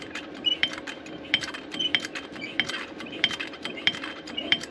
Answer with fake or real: fake